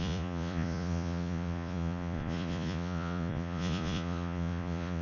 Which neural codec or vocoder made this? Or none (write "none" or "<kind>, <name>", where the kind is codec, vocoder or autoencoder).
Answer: vocoder, Vocos